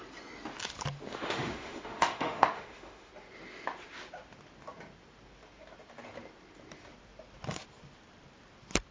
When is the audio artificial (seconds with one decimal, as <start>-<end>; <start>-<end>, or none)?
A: 1.1-3.1